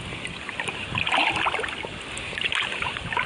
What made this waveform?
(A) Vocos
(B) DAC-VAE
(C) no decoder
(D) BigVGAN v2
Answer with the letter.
C